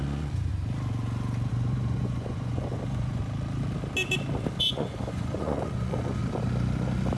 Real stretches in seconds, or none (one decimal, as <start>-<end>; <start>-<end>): 0.5-1.5; 3.2-4.6; 6.2-7.2